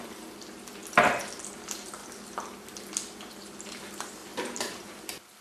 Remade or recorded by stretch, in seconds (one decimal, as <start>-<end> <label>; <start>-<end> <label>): 0.0-5.4 recorded